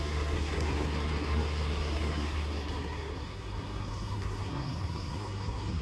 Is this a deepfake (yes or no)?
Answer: yes